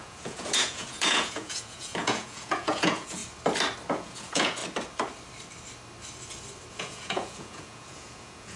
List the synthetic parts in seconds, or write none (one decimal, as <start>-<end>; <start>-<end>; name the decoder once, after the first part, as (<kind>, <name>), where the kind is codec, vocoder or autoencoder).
0.0-3.2 (vocoder, Vocos); 3.9-4.6; 6.7-8.6